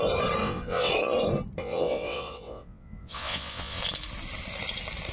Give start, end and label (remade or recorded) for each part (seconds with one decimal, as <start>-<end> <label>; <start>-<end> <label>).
0.0-0.4 recorded; 0.4-0.9 remade; 0.9-1.6 recorded; 1.6-3.8 remade; 3.8-5.1 recorded